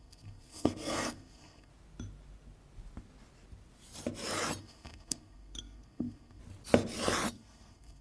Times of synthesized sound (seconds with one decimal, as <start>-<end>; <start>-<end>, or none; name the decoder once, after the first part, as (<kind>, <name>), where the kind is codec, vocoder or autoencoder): 0.0-1.7 (codec, SNAC); 4.6-6.4; 7.3-8.0